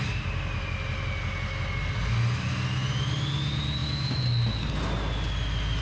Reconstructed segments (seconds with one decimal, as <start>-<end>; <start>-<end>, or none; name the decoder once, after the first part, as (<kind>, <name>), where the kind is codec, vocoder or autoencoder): none